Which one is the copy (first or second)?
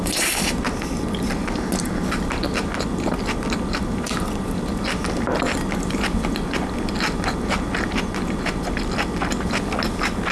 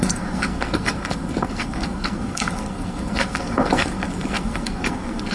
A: second